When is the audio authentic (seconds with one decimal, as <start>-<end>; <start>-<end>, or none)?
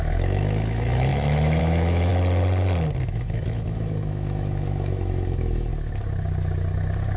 2.1-3.0; 5.7-7.2